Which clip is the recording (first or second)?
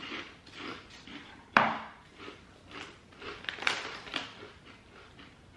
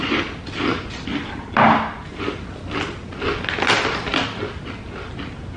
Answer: second